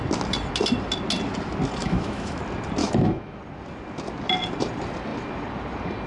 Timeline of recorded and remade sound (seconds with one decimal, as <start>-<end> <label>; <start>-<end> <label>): 0.0-1.8 recorded; 1.8-2.4 remade; 2.4-2.8 recorded; 2.8-3.4 remade; 3.4-6.1 recorded